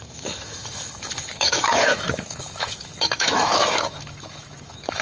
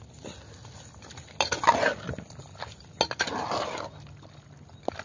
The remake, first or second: first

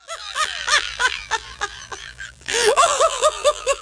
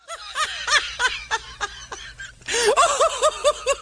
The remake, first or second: first